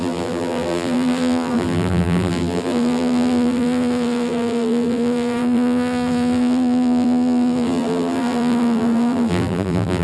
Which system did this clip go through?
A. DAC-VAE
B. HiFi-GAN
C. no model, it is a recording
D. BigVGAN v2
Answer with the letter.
D